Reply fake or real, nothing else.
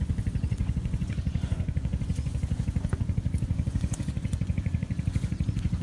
fake